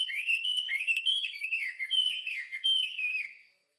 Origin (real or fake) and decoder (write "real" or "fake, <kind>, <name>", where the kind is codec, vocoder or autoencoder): fake, codec, SNAC